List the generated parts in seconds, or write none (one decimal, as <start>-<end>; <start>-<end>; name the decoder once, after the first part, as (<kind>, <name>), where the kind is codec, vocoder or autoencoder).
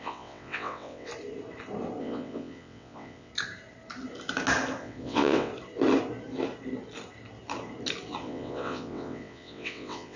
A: 0.0-1.1 (vocoder, WaveNeXt); 2.0-3.3; 4.8-5.5; 8.2-10.2